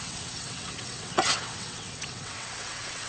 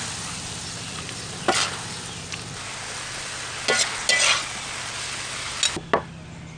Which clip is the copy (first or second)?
first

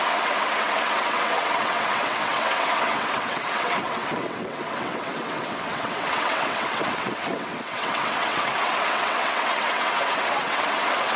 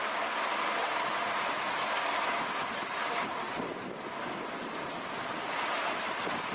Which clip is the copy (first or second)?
first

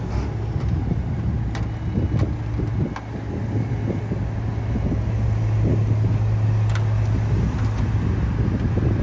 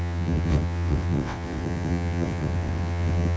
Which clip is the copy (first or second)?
second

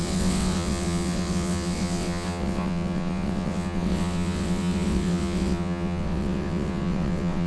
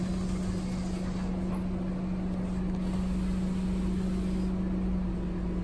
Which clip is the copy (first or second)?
first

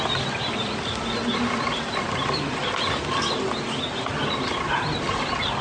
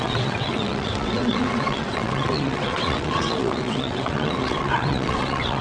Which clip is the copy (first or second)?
second